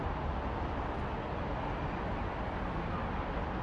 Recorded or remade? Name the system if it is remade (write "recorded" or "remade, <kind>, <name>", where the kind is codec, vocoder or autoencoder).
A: recorded